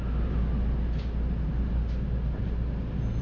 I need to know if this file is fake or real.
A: real